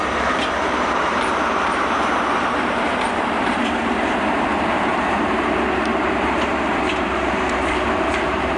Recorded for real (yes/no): no